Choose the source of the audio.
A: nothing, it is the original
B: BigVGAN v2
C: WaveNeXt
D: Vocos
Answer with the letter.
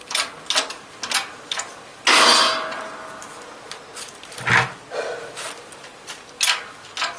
A